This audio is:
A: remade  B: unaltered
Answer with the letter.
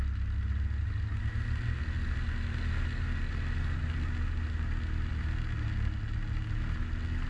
B